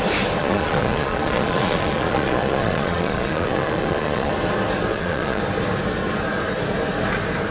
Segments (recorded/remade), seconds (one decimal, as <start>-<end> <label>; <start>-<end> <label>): 0.0-0.4 recorded; 0.4-4.3 remade; 4.3-4.9 recorded; 4.9-5.4 remade; 5.4-7.5 recorded